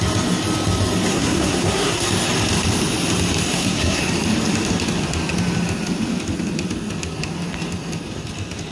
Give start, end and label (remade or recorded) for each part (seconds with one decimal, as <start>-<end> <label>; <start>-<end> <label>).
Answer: 0.0-1.1 recorded; 1.1-2.1 remade; 2.1-3.5 recorded; 3.5-4.0 remade; 4.0-8.7 recorded